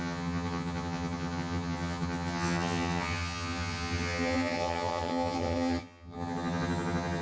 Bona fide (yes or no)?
no